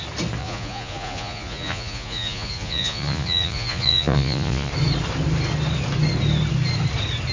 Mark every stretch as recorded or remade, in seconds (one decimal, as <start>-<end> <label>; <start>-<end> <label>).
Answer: 0.0-0.4 recorded; 0.4-4.7 remade; 4.7-7.3 recorded